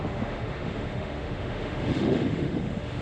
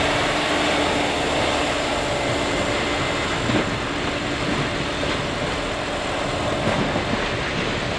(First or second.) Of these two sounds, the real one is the second